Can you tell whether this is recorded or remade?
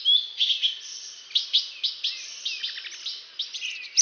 recorded